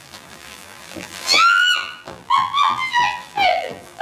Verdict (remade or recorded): remade